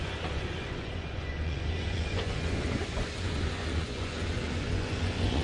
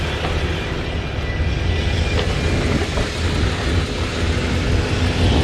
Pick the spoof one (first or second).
first